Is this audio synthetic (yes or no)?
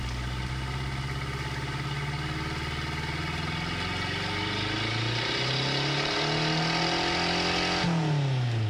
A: no